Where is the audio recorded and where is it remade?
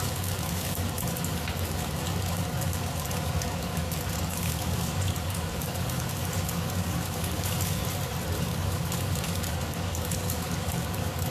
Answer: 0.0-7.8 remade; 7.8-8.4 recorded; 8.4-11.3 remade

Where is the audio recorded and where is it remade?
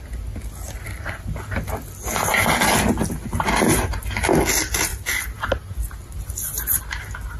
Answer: 0.0-7.4 recorded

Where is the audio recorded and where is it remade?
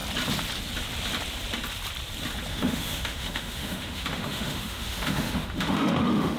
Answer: 0.0-2.5 recorded; 2.5-6.4 remade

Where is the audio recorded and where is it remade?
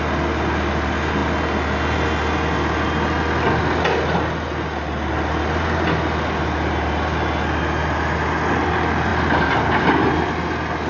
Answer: 0.0-10.9 recorded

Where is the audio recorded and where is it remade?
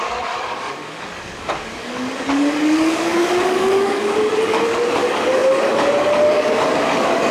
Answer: 0.0-7.3 remade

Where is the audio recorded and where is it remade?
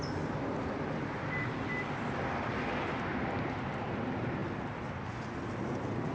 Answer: 0.0-6.1 recorded